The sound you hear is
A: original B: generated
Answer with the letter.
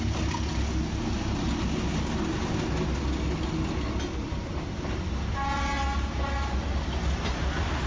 A